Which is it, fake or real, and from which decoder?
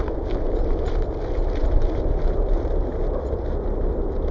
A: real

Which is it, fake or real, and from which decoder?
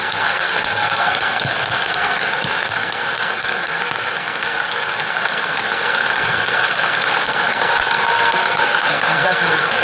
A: fake, codec, SNAC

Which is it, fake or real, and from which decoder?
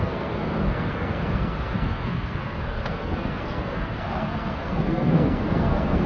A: fake, codec, SNAC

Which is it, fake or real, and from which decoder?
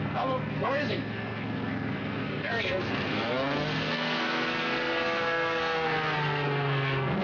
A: fake, codec, SNAC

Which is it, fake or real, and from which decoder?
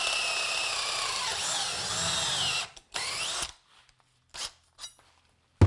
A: real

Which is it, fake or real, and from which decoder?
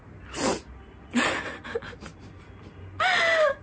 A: real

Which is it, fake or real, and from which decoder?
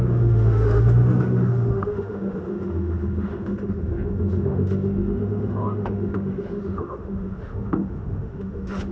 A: fake, autoencoder, DAC-VAE